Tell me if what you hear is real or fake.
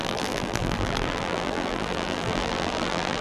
fake